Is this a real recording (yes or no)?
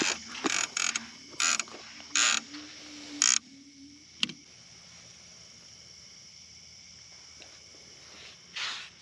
yes